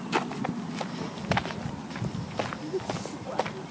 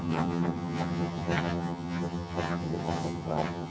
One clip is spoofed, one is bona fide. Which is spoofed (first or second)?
second